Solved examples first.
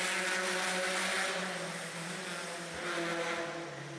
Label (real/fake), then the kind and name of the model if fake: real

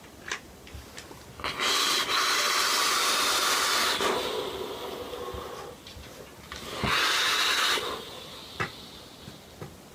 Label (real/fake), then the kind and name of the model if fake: real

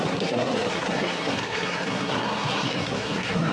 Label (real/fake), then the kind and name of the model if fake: fake, codec, SNAC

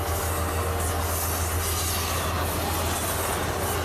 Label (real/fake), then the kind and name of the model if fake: real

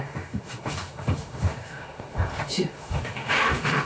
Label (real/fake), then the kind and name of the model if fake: fake, autoencoder, DAC-VAE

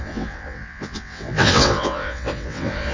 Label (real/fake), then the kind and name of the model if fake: fake, vocoder, WaveNeXt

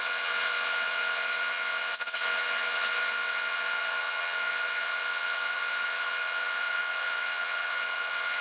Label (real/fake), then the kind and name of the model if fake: fake, vocoder, WaveNeXt